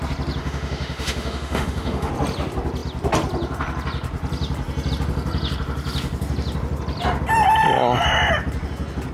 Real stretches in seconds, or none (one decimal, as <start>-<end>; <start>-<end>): 0.0-0.4; 2.1-9.1